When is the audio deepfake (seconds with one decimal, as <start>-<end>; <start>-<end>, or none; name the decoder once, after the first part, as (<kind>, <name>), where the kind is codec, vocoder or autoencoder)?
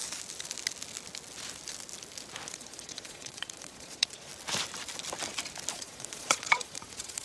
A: 2.5-4.3 (vocoder, Vocos); 5.7-7.2